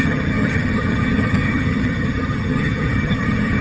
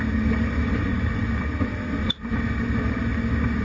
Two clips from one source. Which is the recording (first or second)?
second